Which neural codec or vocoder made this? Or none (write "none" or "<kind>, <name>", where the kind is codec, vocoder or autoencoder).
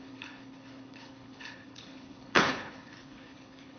codec, HILCodec